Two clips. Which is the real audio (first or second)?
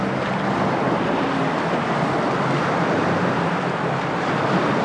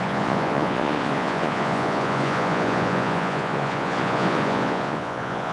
first